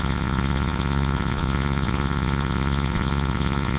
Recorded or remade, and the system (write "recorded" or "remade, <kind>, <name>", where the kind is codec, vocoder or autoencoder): remade, vocoder, Vocos